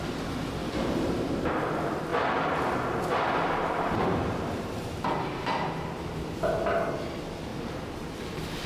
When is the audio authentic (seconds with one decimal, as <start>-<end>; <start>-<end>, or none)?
0.0-0.6; 1.5-3.6; 5.8-7.5